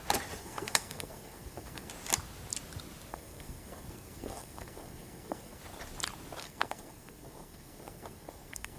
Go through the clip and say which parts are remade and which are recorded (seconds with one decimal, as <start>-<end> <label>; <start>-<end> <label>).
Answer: 0.0-0.4 recorded; 0.4-1.9 remade; 1.9-3.1 recorded; 3.1-5.6 remade; 5.6-6.4 recorded; 6.4-8.8 remade